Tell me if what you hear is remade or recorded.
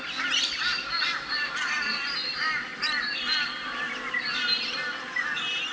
recorded